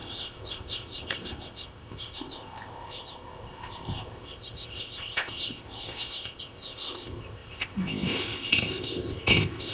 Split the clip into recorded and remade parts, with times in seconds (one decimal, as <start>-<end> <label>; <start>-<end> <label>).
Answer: 0.0-9.7 remade